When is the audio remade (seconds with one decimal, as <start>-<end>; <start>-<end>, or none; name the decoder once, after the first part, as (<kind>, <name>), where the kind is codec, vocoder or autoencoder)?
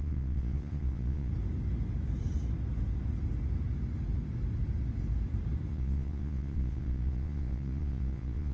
0.0-1.3 (vocoder, Vocos); 5.7-8.5